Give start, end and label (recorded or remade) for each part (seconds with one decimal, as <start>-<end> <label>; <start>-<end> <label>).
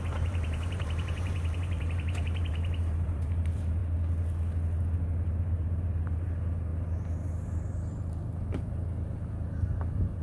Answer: 0.0-3.8 remade; 3.8-5.2 recorded; 5.2-6.7 remade; 6.7-8.5 recorded; 8.5-10.2 remade